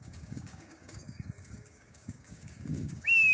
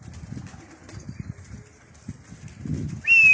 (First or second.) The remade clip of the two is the first